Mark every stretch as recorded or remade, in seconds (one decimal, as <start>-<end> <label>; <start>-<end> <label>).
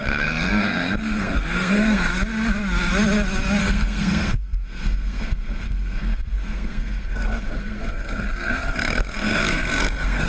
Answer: 0.0-2.1 remade; 2.1-3.6 recorded; 3.6-10.3 remade